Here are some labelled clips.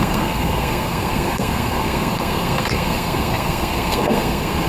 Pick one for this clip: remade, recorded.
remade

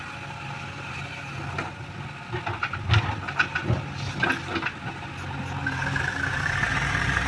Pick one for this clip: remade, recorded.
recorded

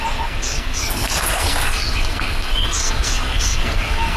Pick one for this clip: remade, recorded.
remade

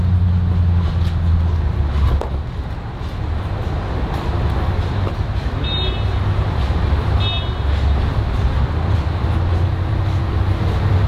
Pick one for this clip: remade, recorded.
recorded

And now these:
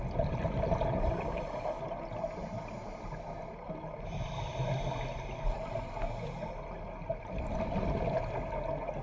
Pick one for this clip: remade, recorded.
recorded